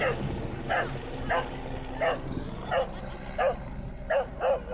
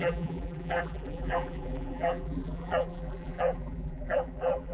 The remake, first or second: second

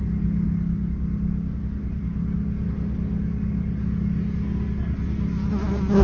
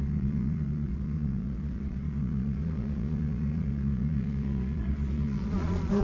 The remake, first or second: second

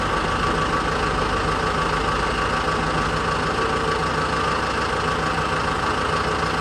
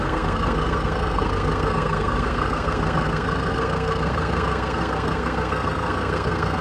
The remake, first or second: second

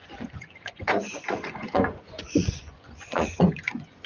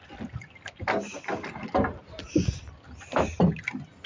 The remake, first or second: first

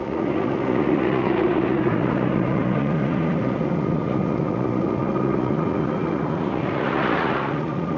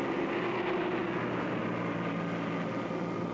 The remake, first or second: first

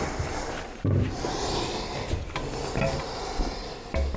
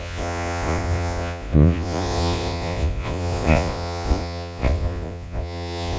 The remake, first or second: second